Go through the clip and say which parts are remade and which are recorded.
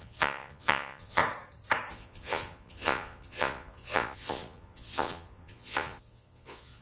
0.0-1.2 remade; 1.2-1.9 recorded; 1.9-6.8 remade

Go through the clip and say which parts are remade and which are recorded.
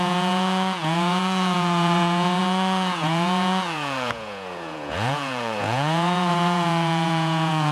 0.0-7.7 remade